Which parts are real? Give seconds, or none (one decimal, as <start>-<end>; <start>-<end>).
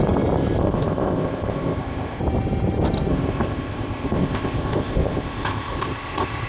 0.0-0.6; 2.2-3.1